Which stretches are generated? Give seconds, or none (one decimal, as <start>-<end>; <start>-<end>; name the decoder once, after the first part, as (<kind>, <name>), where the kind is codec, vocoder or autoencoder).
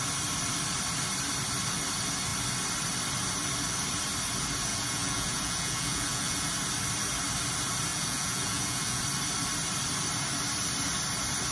4.7-6.5 (vocoder, Vocos); 7.9-9.0